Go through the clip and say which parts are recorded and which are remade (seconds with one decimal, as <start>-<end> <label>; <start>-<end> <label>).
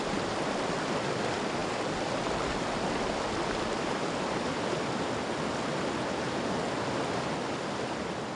0.0-8.4 recorded